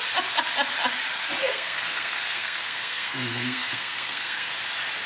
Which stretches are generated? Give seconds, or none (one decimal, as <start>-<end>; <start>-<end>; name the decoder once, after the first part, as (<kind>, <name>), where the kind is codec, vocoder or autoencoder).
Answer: 1.4-4.5 (codec, SNAC)